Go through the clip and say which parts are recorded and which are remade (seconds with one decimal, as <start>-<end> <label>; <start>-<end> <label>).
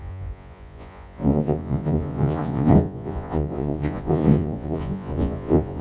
0.0-5.8 remade